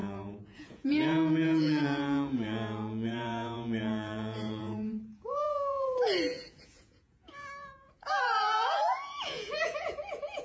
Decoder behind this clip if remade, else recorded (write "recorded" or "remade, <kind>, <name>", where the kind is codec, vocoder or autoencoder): remade, vocoder, Vocos